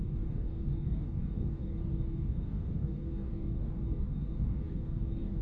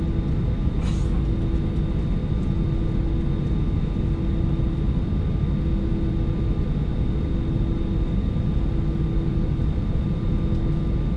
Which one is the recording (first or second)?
second